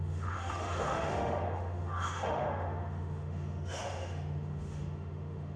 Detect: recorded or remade remade